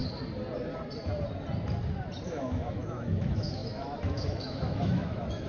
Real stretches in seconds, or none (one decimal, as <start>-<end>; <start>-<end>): 0.0-2.3